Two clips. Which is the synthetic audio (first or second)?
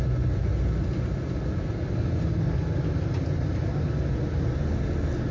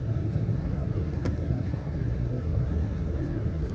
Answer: second